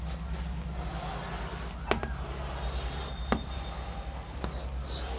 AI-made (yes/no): no